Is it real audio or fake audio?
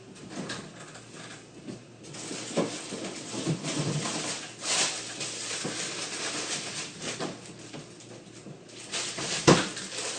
real